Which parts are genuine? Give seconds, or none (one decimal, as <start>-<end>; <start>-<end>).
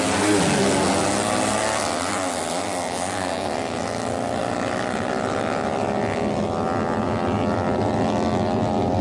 0.0-9.0